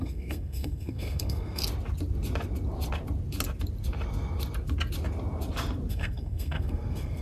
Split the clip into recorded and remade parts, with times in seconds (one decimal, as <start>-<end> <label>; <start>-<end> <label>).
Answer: 0.0-1.6 remade; 1.6-5.9 recorded; 5.9-7.2 remade